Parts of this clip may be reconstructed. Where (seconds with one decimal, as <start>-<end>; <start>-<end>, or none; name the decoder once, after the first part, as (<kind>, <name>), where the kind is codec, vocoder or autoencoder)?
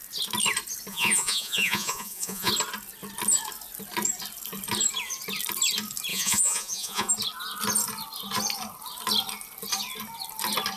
0.9-2.5 (vocoder, Vocos); 6.1-7.1